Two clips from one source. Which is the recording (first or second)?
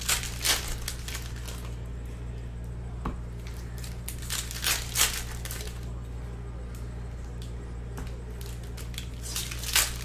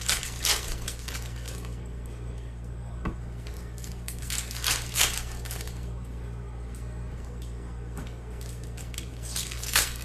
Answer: first